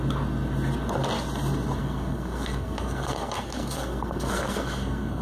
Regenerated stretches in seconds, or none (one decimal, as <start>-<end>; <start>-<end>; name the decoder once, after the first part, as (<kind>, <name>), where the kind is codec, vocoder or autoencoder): 1.8-5.2 (codec, SNAC)